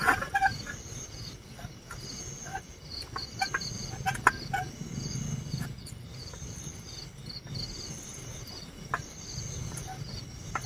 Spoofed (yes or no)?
no